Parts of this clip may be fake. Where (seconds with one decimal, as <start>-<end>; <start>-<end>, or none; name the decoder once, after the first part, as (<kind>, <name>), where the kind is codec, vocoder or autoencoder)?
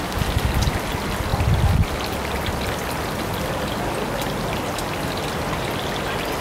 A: none